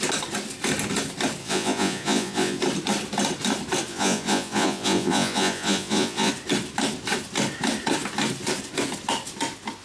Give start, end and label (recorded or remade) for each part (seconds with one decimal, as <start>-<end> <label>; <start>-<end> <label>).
0.0-1.4 recorded; 1.4-2.6 remade; 2.6-3.9 recorded; 3.9-6.3 remade; 6.3-9.8 recorded